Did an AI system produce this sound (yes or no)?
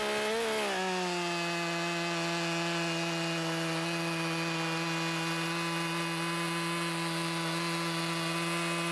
no